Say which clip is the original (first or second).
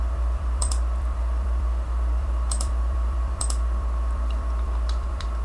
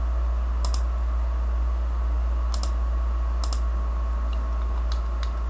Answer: second